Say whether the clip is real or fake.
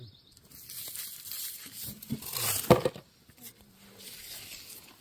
real